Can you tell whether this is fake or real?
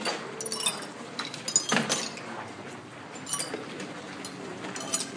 real